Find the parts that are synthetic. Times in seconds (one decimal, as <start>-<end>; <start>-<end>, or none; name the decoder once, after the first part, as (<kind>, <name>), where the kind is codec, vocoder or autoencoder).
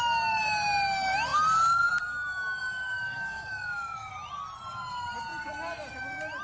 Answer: 2.6-4.1 (autoencoder, DAC-VAE)